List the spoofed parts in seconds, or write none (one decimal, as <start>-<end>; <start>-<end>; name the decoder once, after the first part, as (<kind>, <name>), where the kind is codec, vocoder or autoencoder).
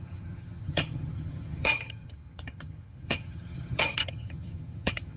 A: 0.0-5.2 (vocoder, HiFi-GAN)